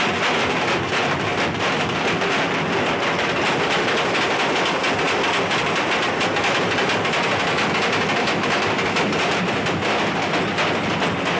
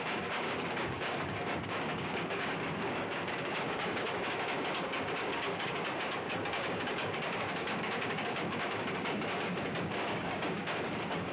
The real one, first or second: first